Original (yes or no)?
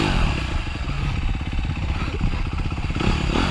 yes